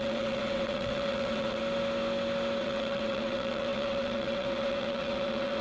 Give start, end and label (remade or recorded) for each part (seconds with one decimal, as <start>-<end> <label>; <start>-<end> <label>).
0.0-1.6 remade; 1.6-2.6 recorded; 2.6-5.6 remade